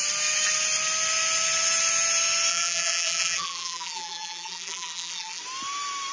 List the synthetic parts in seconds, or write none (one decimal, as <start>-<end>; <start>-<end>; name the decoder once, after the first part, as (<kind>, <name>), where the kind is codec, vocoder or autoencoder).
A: 2.5-5.4 (vocoder, BigVGAN v2)